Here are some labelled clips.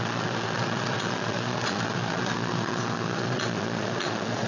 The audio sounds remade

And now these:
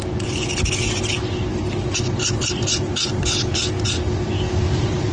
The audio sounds recorded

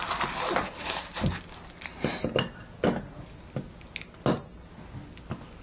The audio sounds recorded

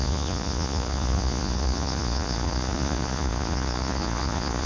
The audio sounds remade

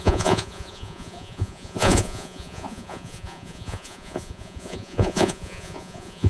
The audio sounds remade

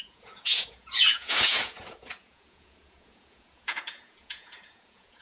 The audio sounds remade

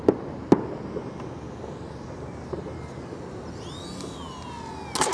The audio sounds recorded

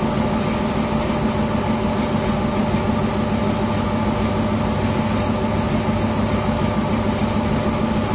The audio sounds recorded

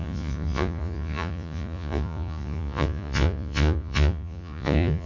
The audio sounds remade